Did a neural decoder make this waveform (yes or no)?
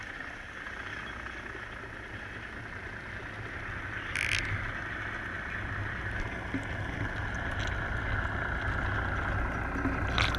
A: no